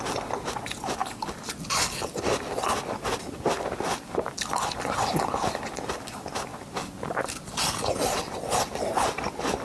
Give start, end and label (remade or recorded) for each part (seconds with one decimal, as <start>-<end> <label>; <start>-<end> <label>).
0.0-9.6 recorded

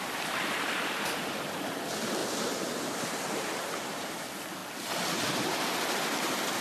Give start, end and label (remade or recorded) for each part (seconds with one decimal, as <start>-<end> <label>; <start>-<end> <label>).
0.0-2.2 remade; 2.2-3.8 recorded; 3.8-4.6 remade; 4.6-6.6 recorded

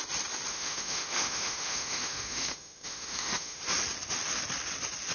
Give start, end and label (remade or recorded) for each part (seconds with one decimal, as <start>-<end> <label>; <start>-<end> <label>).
0.0-0.5 recorded; 0.5-3.6 remade; 3.6-5.1 recorded

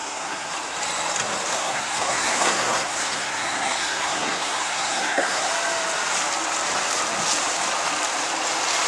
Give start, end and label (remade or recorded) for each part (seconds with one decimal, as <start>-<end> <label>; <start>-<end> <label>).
0.0-0.5 remade; 0.5-1.5 recorded; 1.5-5.5 remade; 5.5-8.9 recorded

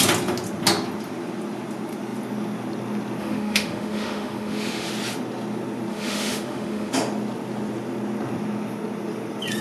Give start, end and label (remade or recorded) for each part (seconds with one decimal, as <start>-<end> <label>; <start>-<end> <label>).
0.0-3.2 recorded; 3.2-4.9 remade; 4.9-5.9 recorded; 5.9-6.9 remade; 6.9-9.6 recorded

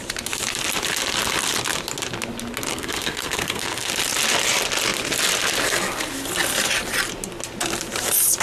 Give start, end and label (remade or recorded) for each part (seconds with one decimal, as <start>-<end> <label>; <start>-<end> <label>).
0.0-2.7 recorded; 2.7-3.9 remade; 3.9-8.4 recorded

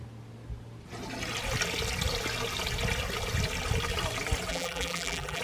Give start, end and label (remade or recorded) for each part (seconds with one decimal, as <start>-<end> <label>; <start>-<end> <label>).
0.0-4.5 recorded; 4.5-5.4 remade